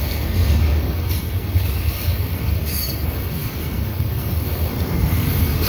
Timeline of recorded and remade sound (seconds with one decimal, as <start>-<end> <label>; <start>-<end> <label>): 0.0-5.7 remade